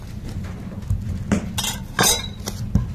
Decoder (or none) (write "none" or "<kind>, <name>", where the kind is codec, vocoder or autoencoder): none